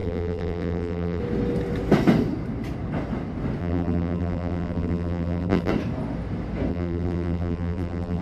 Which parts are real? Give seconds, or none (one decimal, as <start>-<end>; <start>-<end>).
1.2-3.6; 5.7-6.7